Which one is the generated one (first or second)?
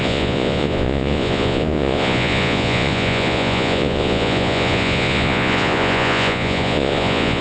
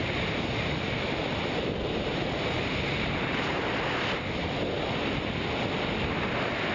first